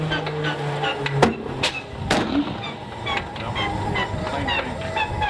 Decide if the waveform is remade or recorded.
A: recorded